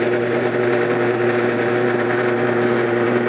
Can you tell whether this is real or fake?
fake